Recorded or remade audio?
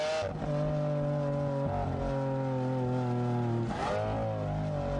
recorded